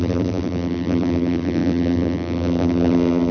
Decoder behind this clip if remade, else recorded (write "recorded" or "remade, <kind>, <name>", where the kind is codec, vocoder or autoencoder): remade, vocoder, BigVGAN v2